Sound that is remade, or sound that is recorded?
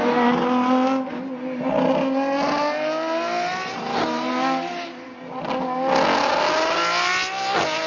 recorded